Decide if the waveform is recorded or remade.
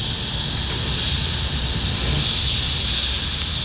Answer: recorded